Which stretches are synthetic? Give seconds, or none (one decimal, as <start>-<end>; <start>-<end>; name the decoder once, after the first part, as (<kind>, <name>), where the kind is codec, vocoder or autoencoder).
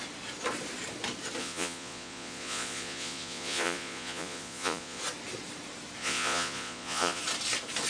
1.4-5.0 (vocoder, Vocos); 6.0-7.2